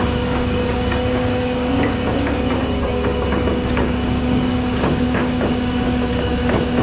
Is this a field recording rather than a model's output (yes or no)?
no